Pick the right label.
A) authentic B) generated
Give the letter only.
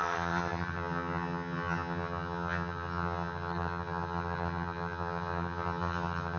B